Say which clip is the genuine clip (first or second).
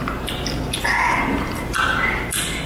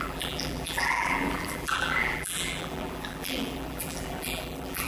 first